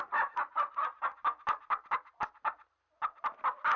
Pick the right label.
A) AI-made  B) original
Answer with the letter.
B